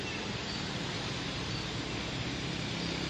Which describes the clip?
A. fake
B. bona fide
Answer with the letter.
B